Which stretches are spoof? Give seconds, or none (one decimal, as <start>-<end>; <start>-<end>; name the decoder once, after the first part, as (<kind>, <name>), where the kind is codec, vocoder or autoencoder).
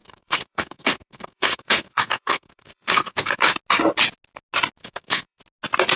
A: 0.0-3.3 (codec, SNAC); 4.8-5.4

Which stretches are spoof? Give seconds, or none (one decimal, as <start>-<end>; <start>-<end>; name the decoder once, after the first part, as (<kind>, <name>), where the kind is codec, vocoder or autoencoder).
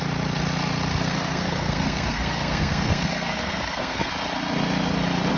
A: 0.9-4.1 (codec, SNAC)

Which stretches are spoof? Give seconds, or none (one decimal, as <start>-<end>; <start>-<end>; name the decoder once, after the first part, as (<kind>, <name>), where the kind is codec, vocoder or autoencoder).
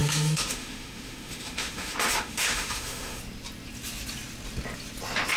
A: 0.0-3.2 (autoencoder, DAC-VAE)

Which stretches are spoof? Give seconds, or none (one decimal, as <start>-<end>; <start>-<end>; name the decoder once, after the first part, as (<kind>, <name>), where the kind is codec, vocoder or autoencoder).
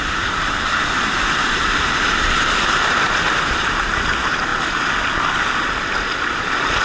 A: 0.0-4.5 (vocoder, BigVGAN v2)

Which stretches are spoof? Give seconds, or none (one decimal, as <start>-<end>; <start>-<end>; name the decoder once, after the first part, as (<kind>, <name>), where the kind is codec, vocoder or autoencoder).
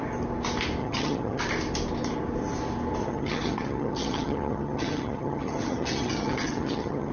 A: 0.8-1.4 (vocoder, HiFi-GAN); 3.0-7.1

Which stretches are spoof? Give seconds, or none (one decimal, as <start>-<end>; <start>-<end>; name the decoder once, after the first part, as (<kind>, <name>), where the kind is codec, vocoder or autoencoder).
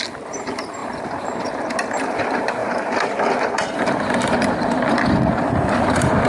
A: 2.6-6.3 (vocoder, BigVGAN v2)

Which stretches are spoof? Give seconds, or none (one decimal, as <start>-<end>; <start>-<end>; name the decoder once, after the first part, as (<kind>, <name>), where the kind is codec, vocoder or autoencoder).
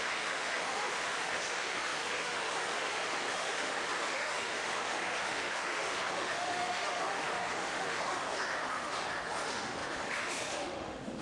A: 0.0-11.2 (autoencoder, DAC-VAE)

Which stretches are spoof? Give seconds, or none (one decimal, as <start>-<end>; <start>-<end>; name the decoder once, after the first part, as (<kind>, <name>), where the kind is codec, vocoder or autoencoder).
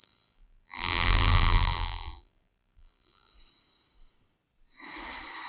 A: 0.0-3.3 (vocoder, BigVGAN v2)